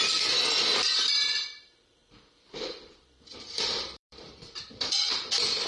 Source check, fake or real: fake